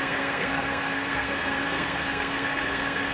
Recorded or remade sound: remade